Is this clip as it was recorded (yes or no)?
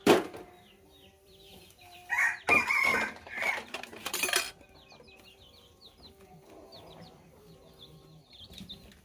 no